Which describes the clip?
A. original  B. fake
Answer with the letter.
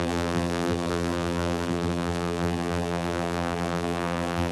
B